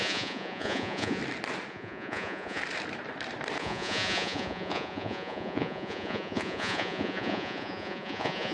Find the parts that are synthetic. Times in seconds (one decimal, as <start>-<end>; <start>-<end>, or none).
0.0-1.2; 1.7-2.6; 3.6-8.5